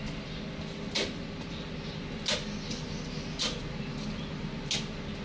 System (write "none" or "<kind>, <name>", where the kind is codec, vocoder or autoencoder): none